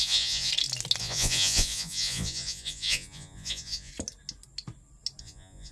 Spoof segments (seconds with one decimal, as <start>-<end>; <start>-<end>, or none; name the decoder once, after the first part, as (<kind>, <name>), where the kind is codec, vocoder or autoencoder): 0.0-0.5 (vocoder, Vocos); 1.0-3.9; 5.2-5.7